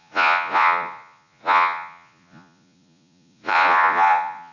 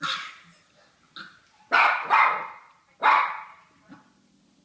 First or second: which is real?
second